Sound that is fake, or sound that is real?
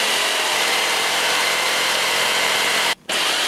fake